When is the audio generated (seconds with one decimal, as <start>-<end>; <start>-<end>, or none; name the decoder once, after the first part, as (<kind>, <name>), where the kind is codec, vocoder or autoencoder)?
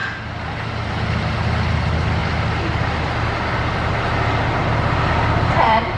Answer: 1.7-2.2 (vocoder, BigVGAN v2); 5.1-6.0